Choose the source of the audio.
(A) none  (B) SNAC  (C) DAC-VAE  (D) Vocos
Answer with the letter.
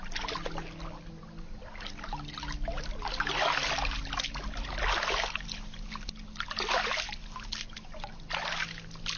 A